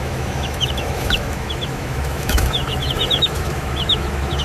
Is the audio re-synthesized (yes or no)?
yes